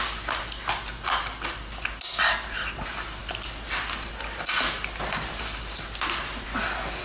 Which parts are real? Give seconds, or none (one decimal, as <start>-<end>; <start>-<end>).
0.0-7.0